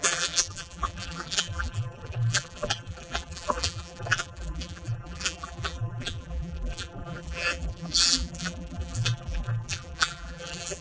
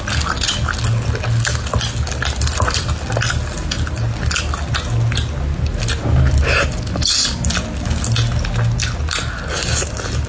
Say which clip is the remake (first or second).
first